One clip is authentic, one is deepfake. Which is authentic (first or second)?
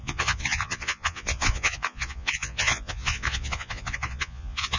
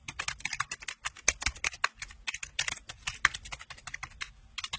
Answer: second